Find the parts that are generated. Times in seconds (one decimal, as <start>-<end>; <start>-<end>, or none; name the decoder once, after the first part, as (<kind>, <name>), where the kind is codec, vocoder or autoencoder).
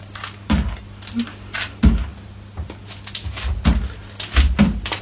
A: none